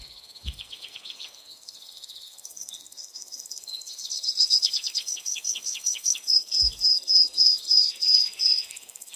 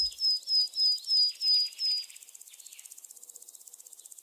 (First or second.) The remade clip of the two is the first